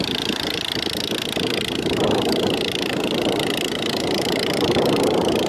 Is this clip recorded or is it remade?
recorded